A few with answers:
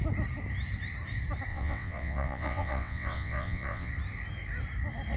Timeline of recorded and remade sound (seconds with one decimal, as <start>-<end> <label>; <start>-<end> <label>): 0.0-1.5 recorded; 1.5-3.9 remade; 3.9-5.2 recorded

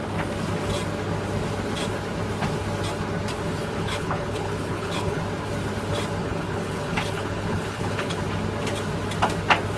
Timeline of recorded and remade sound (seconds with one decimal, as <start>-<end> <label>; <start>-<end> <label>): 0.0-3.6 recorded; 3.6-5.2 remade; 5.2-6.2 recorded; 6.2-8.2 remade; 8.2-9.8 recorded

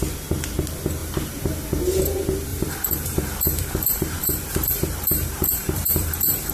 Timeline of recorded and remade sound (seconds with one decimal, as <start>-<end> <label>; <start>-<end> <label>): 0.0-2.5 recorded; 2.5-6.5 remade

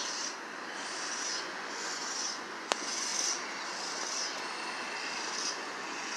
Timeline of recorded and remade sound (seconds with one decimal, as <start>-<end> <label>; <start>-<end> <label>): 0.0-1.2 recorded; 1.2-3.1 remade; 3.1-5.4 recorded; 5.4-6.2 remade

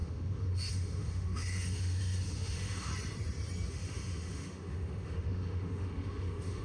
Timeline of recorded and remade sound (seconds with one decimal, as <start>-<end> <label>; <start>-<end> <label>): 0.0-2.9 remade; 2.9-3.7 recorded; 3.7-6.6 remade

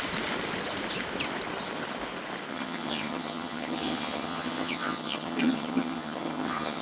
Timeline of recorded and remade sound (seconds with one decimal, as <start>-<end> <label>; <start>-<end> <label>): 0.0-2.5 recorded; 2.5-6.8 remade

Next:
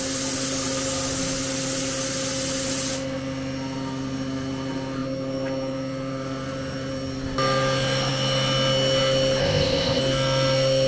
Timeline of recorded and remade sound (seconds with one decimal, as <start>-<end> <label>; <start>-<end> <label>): 0.0-9.4 recorded; 9.4-10.0 remade; 10.0-10.9 recorded

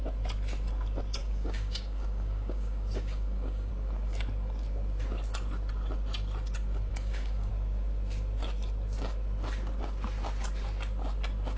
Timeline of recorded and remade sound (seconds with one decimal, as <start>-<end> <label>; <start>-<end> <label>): 0.0-1.2 recorded; 1.2-3.7 remade; 3.7-6.9 recorded; 6.9-7.5 remade; 7.5-11.6 recorded